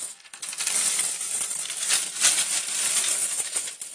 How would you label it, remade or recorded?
recorded